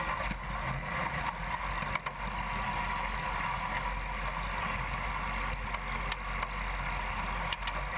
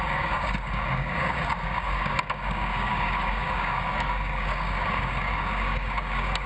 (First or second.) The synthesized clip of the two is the second